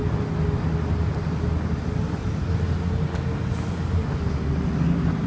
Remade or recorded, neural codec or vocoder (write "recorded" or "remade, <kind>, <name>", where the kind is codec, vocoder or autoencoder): recorded